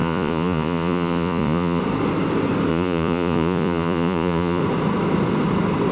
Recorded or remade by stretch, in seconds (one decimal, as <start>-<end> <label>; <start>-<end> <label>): 0.0-1.8 remade; 1.8-2.7 recorded; 2.7-4.6 remade; 4.6-5.9 recorded